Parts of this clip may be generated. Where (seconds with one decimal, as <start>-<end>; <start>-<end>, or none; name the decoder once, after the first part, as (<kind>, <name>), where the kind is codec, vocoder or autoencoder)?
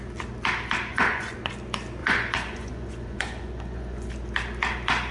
0.9-1.5 (vocoder, Vocos); 2.0-4.1